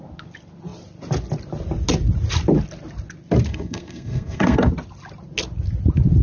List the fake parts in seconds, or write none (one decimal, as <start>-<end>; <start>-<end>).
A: 3.5-4.7

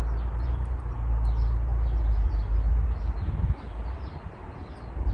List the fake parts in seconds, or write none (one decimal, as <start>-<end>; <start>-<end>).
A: none

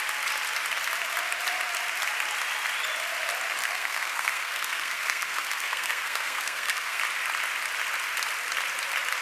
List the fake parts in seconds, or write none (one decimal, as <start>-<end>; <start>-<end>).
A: 3.6-7.0

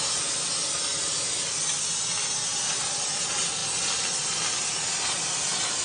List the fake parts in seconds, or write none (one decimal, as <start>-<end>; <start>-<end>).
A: none

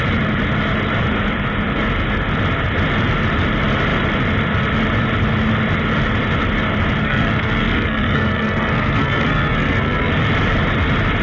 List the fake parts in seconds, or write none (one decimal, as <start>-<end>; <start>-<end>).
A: 7.0-10.1

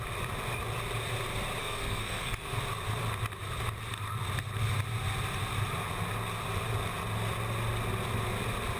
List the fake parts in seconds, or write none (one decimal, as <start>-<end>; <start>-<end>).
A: 1.6-2.6

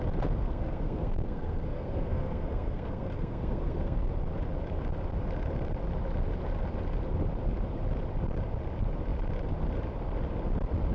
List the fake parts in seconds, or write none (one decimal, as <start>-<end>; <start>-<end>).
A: 0.4-4.1

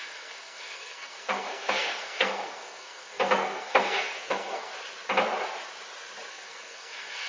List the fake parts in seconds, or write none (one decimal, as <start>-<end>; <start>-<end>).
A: 0.0-4.7; 6.3-7.3